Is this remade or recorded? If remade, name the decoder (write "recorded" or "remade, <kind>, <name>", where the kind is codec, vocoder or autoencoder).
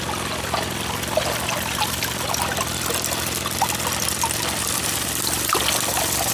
recorded